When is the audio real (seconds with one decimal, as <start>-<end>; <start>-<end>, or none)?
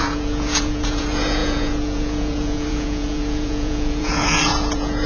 none